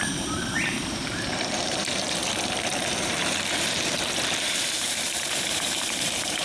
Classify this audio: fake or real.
fake